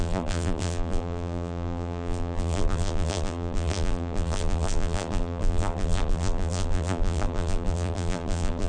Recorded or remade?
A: remade